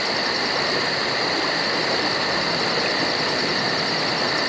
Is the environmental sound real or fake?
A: real